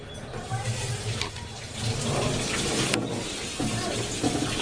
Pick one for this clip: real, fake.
real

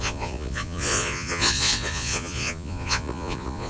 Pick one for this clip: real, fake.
fake